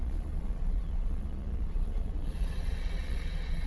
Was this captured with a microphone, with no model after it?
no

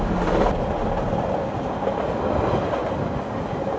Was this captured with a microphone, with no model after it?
yes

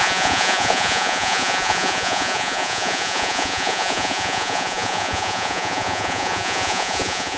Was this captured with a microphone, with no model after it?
no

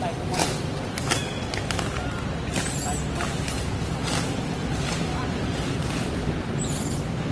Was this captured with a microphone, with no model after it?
yes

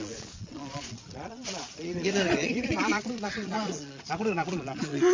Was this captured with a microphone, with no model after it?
no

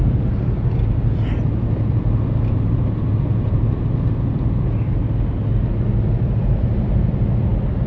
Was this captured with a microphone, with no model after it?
yes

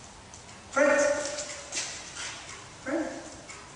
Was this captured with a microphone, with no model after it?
yes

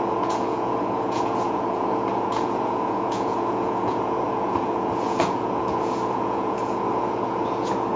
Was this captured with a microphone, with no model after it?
no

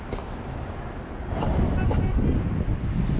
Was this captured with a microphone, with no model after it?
yes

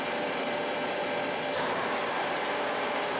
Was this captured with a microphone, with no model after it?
yes